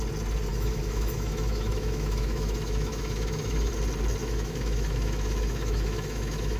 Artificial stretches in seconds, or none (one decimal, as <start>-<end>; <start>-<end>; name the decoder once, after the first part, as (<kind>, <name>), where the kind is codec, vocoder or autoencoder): 0.5-3.7 (autoencoder, DAC-VAE); 4.2-6.6